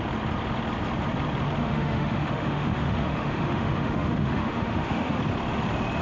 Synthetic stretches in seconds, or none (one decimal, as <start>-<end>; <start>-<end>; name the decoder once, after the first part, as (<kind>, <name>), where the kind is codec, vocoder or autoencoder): 1.6-5.2 (autoencoder, DAC-VAE)